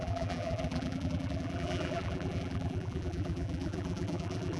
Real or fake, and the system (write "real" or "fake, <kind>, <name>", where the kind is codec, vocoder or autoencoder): fake, vocoder, BigVGAN v2